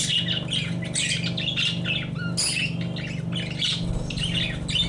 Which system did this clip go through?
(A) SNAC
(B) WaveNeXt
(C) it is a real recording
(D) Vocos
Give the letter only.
C